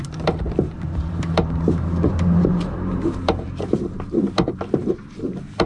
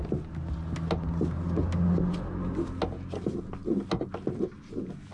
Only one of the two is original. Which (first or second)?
second